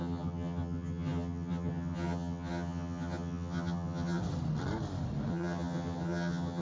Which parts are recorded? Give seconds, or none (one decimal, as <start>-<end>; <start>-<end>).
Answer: 4.2-5.3